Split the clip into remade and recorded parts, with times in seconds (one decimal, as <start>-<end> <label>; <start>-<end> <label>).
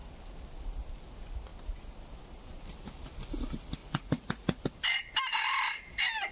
0.0-3.8 recorded; 3.8-4.6 remade; 4.6-6.3 recorded